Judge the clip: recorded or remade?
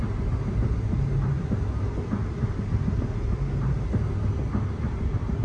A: recorded